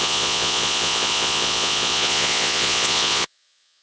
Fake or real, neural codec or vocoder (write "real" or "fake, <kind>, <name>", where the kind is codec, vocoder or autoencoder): fake, vocoder, Vocos